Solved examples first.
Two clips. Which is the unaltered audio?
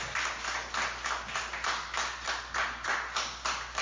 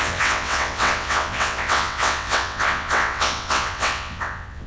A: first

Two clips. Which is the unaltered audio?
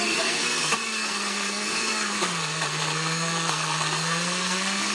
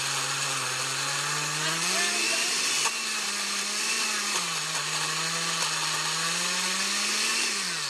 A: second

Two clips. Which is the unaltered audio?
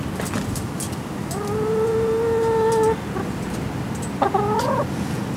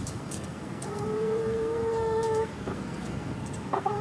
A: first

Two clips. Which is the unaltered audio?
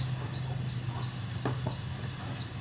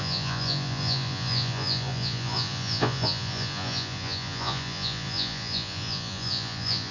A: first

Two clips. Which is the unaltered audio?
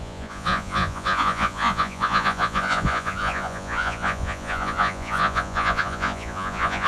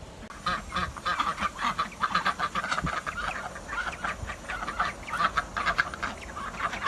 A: second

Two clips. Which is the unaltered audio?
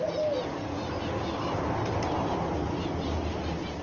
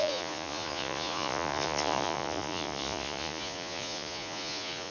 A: first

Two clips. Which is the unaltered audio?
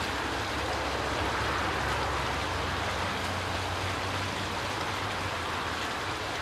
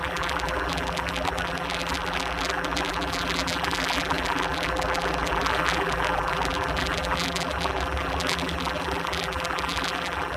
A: first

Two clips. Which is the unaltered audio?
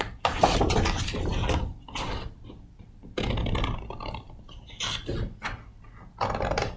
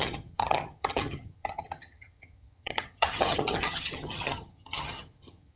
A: first